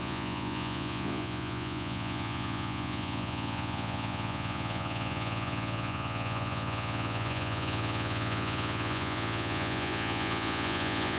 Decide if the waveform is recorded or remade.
remade